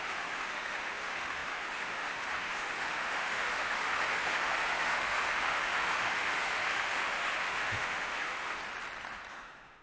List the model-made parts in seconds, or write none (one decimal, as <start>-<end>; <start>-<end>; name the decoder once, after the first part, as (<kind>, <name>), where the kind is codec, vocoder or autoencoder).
0.0-8.6 (autoencoder, DAC-VAE); 9.3-9.8